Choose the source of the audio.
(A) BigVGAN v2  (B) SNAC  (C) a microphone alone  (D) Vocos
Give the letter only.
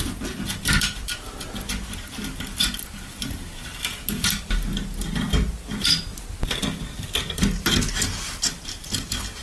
C